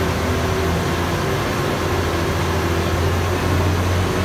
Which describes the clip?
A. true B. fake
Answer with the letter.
A